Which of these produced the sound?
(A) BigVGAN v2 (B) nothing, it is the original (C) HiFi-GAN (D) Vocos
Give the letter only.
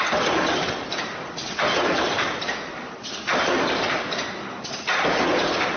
B